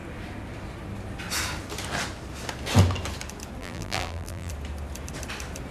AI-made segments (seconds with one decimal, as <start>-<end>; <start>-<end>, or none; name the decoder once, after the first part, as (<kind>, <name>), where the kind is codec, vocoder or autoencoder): 3.6-4.5 (vocoder, BigVGAN v2)